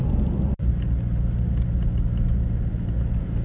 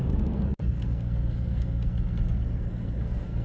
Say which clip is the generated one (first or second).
second